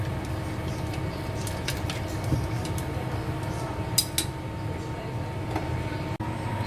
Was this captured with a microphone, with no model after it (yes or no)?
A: yes